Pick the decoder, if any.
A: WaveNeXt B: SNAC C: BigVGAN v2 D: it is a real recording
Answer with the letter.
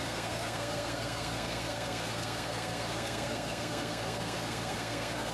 B